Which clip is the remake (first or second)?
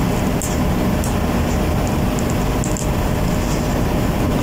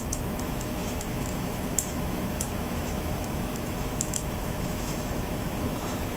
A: second